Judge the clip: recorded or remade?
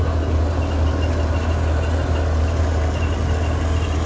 recorded